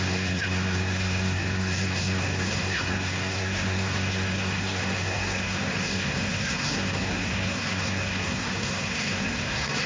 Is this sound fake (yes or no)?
yes